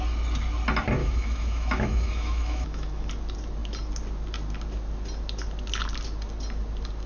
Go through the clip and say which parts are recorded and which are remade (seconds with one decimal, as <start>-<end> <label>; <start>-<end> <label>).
0.0-1.0 recorded; 1.0-3.1 remade; 3.1-7.1 recorded